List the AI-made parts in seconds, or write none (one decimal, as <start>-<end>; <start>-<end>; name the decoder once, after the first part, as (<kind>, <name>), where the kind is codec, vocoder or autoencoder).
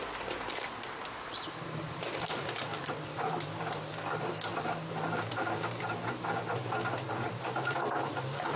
0.0-4.5 (vocoder, BigVGAN v2); 8.1-8.6